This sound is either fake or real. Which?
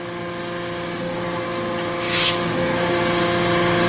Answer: real